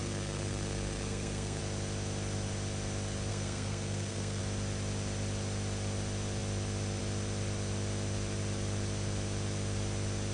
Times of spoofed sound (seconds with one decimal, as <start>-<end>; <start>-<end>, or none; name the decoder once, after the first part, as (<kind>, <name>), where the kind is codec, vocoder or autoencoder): 0.0-1.6 (codec, SNAC); 3.3-4.4